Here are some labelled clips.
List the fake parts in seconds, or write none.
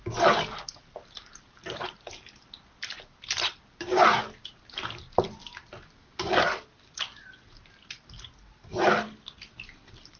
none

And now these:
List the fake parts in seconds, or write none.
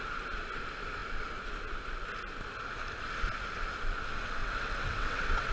4.4-5.5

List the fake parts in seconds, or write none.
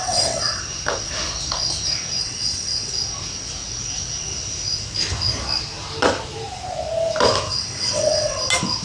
0.0-0.6; 2.2-2.9; 7.5-8.4